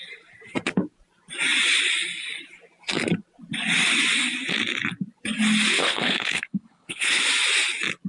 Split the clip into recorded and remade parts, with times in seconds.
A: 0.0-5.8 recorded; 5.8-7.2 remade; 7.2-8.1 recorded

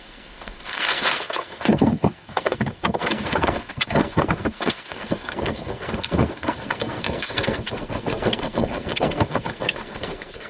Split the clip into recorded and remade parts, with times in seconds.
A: 0.0-10.5 remade

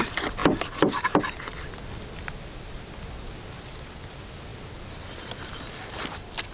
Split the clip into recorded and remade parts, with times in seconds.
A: 0.0-6.5 recorded

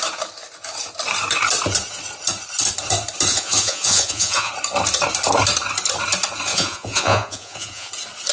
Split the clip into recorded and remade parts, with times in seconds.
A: 0.0-3.3 recorded; 3.3-4.5 remade; 4.5-6.5 recorded; 6.5-7.9 remade; 7.9-8.3 recorded

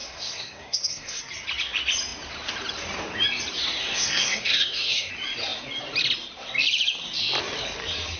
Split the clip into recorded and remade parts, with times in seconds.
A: 0.0-1.2 remade; 1.2-3.8 recorded; 3.8-5.1 remade; 5.1-8.2 recorded

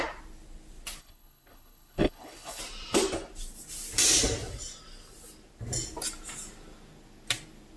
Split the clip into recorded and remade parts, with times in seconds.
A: 0.0-1.0 recorded; 1.0-2.6 remade; 2.6-7.8 recorded